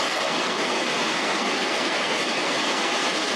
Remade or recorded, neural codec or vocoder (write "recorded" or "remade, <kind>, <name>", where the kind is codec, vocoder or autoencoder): remade, codec, SNAC